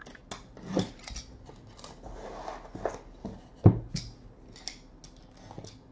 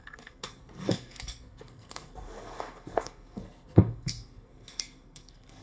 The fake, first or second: second